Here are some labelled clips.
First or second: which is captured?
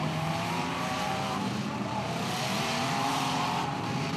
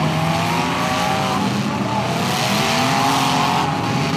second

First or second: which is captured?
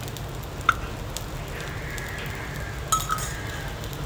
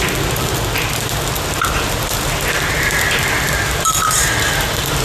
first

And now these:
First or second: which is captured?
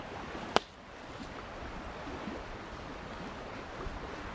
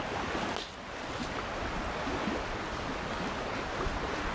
second